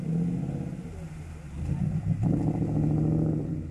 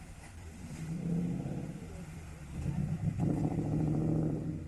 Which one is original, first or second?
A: first